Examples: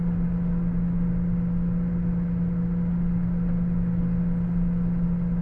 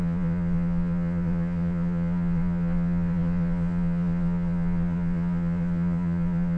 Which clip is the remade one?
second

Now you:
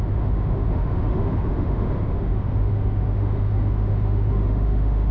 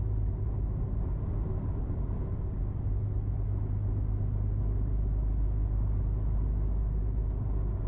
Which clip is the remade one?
first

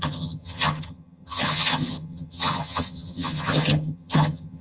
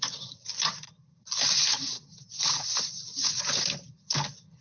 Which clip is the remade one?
first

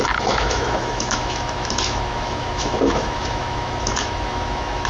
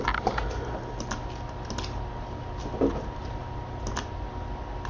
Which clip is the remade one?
first